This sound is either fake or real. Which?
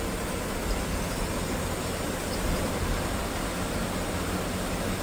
real